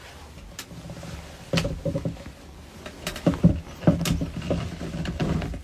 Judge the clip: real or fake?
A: real